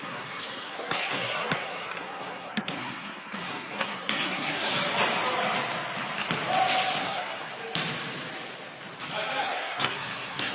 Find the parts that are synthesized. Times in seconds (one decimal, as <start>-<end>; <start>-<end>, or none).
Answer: 0.0-4.7; 7.0-7.5; 9.4-10.5